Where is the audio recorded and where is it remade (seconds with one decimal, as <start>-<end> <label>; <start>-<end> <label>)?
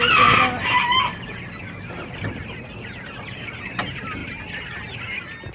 0.0-5.5 recorded